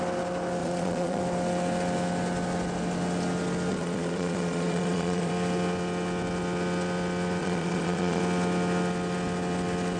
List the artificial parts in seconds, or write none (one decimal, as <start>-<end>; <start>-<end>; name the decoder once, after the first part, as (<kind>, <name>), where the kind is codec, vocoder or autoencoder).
0.6-1.2 (vocoder, Vocos); 3.7-5.3; 7.4-8.2